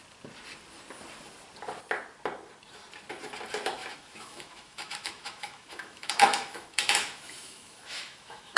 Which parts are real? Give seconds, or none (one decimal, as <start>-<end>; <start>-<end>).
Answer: 0.0-3.8